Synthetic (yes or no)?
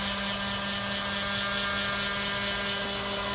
no